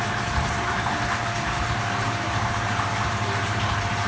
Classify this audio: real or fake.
fake